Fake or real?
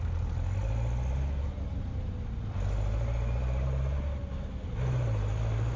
real